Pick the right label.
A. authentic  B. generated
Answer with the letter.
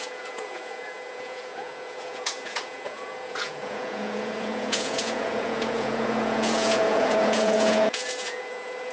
B